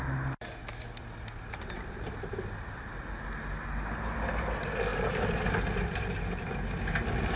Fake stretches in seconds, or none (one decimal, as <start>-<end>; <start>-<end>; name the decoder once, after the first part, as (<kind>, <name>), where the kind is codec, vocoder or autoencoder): none